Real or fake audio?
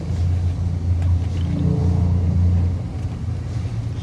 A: real